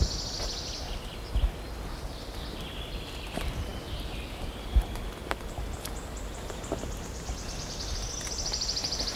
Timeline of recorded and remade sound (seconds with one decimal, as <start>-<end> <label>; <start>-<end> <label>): 0.0-9.2 recorded